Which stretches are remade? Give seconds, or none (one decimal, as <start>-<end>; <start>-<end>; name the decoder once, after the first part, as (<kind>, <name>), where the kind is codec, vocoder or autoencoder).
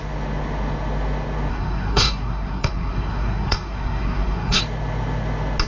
1.5-4.6 (codec, SNAC)